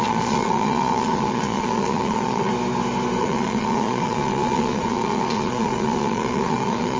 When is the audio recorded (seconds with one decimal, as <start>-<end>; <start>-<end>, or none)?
2.5-3.2